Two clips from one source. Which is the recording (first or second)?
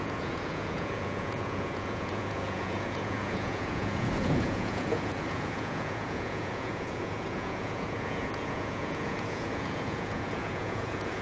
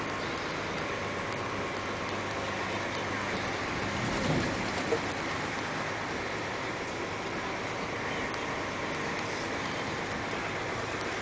second